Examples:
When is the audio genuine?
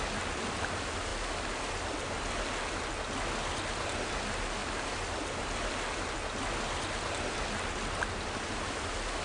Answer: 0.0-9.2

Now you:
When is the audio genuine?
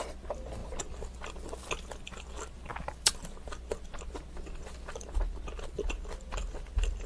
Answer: 0.0-7.1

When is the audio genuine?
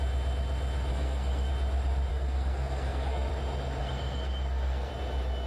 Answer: 0.0-0.9; 1.5-2.1; 3.3-3.8; 4.9-5.5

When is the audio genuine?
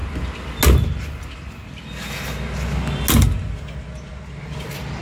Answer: 0.0-5.0